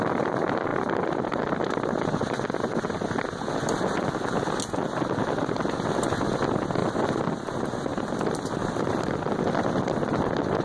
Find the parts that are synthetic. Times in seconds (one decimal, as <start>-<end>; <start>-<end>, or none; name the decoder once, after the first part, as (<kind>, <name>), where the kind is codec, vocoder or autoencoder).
6.8-7.5 (vocoder, BigVGAN v2); 7.9-8.8